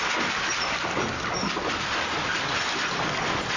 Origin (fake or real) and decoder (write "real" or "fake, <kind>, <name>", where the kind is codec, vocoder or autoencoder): real